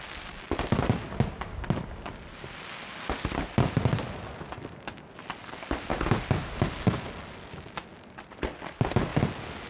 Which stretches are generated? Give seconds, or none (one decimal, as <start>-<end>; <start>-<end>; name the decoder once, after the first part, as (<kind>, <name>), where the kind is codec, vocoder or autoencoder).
none